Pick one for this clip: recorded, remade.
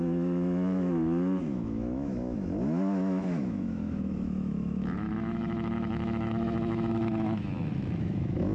remade